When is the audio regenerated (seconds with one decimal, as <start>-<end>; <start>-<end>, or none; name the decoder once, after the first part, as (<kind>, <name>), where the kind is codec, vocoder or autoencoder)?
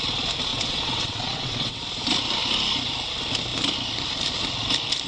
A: 0.5-1.8 (vocoder, WaveNeXt)